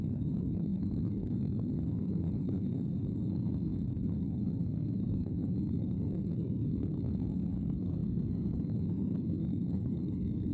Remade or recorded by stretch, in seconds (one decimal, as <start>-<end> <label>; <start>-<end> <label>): 0.0-10.5 remade